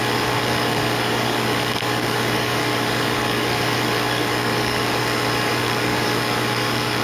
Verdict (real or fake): fake